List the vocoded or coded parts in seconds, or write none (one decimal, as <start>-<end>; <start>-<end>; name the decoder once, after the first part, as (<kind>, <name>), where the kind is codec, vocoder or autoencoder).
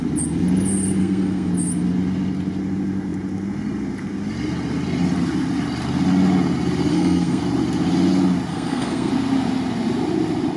1.0-1.5 (codec, SNAC); 6.9-7.4; 8.5-9.1